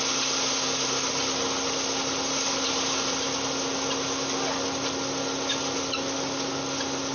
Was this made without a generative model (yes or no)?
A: yes